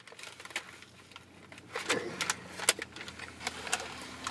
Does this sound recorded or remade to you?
recorded